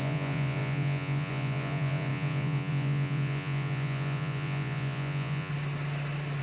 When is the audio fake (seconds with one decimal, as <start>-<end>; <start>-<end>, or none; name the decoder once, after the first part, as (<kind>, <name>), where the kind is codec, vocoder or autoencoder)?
0.0-5.5 (vocoder, Vocos)

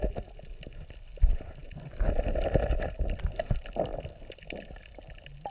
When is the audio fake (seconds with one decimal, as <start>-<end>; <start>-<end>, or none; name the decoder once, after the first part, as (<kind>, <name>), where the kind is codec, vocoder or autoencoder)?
1.6-3.2 (vocoder, BigVGAN v2)

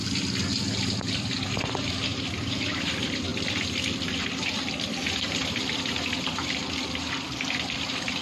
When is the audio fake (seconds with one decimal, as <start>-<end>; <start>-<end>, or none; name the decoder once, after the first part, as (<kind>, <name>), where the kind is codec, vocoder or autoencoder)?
0.8-2.1 (vocoder, BigVGAN v2); 2.6-8.2

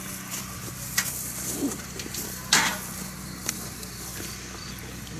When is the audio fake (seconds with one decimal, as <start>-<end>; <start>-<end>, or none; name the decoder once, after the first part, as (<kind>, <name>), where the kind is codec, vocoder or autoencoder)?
0.0-2.7 (vocoder, BigVGAN v2); 3.4-5.2

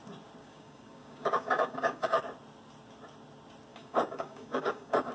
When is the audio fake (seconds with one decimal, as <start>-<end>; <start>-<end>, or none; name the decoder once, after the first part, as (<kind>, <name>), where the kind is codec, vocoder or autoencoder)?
0.4-2.2 (codec, DAC); 3.7-5.1